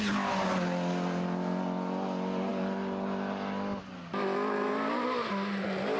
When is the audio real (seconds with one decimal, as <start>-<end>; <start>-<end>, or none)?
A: 0.0-6.0